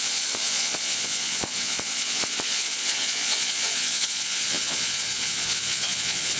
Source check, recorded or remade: remade